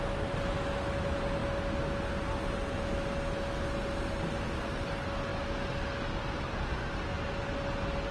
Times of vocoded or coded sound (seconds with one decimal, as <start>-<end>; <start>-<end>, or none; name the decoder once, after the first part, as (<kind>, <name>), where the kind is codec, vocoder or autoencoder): none